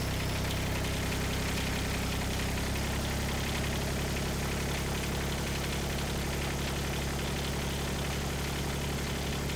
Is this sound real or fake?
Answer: real